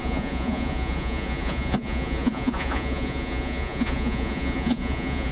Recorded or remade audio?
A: remade